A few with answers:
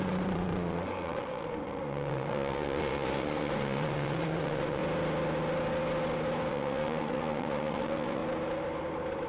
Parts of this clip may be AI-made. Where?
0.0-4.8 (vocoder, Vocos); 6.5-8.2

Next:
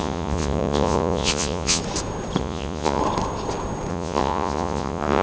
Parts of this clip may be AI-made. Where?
0.0-1.8 (vocoder, Vocos); 2.4-3.0; 3.9-5.2

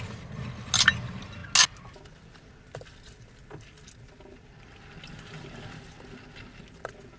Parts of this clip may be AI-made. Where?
none

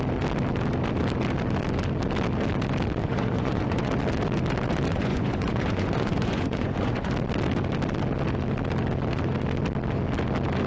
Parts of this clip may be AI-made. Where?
3.0-3.9 (vocoder, Vocos); 4.9-7.1

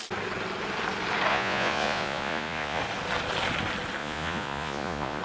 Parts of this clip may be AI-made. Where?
1.3-2.8 (vocoder, Vocos); 4.0-5.2

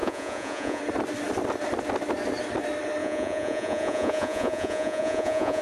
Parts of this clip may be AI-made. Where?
0.0-0.8 (vocoder, Vocos); 3.0-5.6

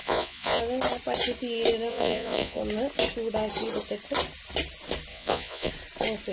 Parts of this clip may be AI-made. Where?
0.0-0.6 (vocoder, Vocos); 1.9-2.6; 5.1-5.7